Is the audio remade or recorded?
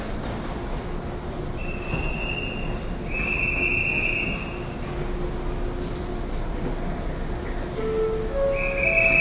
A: recorded